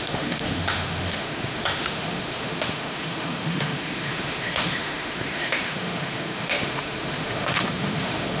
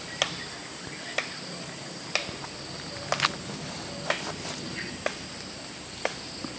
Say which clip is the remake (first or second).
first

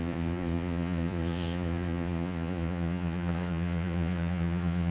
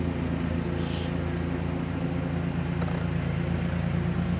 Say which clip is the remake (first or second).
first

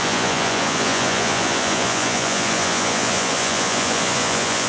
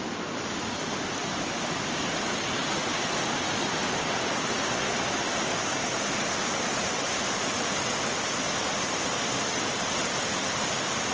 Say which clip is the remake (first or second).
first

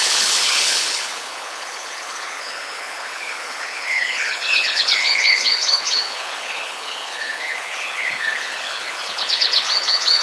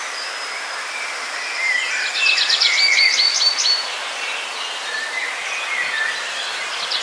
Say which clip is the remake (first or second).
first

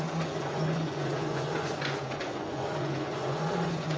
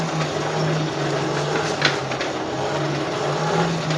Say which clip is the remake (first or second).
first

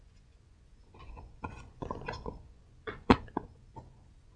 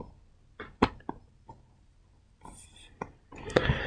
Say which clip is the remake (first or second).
first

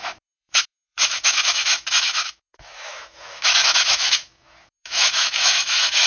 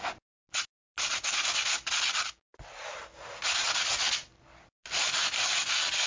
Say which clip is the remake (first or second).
first